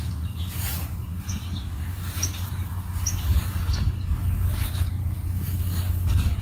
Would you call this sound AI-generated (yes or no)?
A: yes